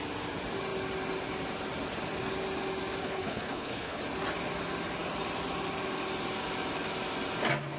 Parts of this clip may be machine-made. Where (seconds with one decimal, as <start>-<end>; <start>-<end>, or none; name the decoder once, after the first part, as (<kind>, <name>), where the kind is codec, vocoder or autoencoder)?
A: 3.0-4.0 (codec, HILCodec)